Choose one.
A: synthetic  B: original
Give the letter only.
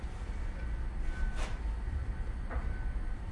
B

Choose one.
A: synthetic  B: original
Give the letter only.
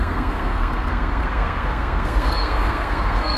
A